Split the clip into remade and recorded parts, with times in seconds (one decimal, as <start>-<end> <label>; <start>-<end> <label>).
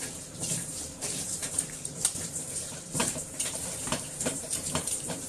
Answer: 0.0-5.3 remade